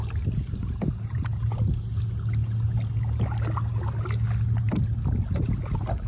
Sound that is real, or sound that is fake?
real